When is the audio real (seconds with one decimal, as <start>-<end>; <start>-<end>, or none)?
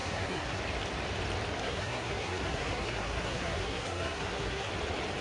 0.6-1.6; 4.7-5.2